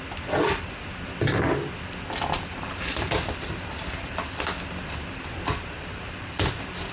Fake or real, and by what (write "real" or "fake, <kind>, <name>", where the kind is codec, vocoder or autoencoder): real